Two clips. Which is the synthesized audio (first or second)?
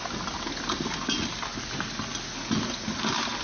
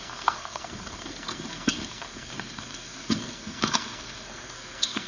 second